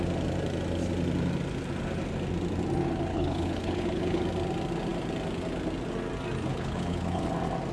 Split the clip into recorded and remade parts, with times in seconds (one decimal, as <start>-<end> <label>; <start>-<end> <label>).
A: 0.0-3.1 recorded; 3.1-4.2 remade; 4.2-6.5 recorded; 6.5-7.3 remade; 7.3-7.7 recorded